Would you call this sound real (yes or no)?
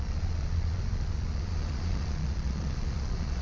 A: no